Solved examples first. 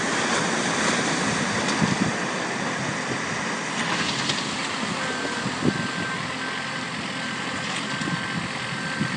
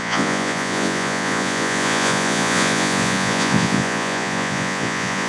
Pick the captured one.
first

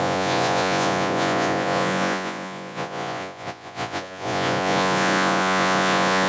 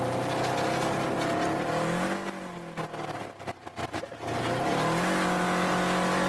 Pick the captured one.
second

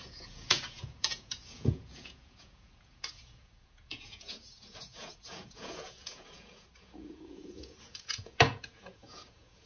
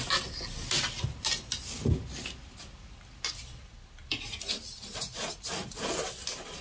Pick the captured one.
second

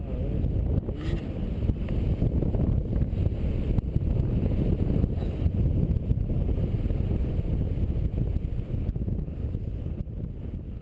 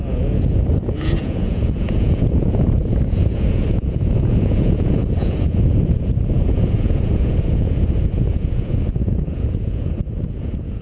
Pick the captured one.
first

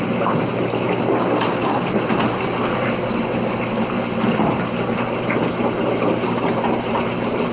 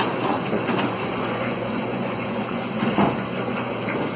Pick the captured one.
first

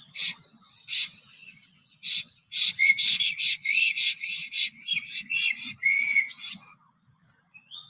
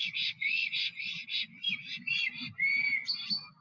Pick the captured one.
second